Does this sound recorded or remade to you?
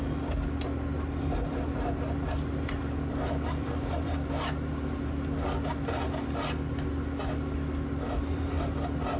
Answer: recorded